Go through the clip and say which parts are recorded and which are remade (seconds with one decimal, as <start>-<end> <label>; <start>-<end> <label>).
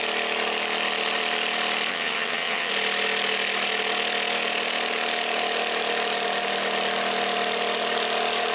0.0-1.9 recorded; 1.9-2.7 remade; 2.7-8.5 recorded